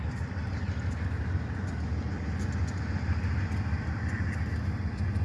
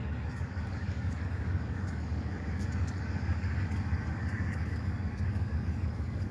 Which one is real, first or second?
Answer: first